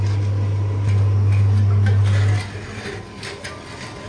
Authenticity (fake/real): real